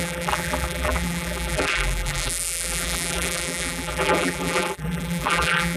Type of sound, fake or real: fake